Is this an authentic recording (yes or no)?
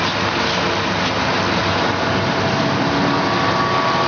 yes